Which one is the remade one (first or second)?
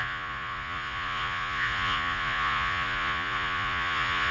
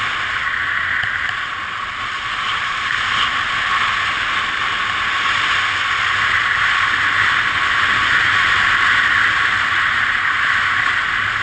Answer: first